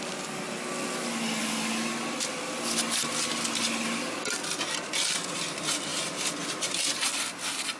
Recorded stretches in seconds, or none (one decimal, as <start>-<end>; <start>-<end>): 0.0-5.9; 7.1-7.8